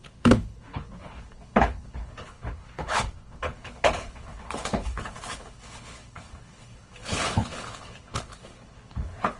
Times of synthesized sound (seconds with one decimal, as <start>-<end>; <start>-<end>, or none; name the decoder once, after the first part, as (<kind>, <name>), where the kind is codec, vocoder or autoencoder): 0.0-9.4 (codec, HILCodec)